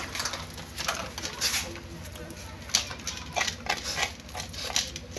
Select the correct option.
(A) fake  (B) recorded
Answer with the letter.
B